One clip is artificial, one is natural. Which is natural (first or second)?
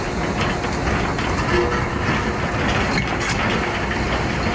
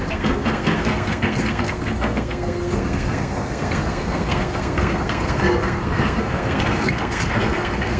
first